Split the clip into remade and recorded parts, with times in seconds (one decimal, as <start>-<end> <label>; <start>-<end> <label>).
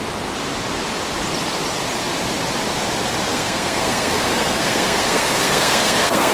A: 0.0-3.3 recorded; 3.3-6.3 remade